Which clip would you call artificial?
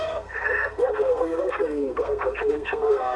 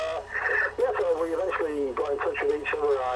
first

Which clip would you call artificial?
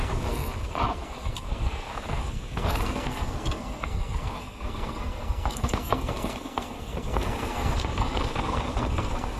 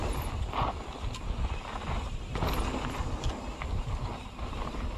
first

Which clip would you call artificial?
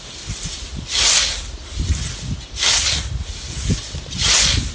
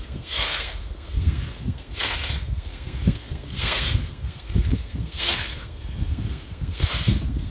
second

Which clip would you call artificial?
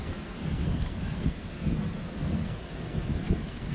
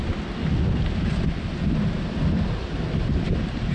first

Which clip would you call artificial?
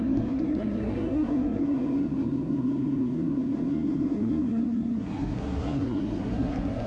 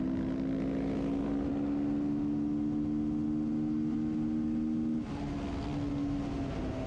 first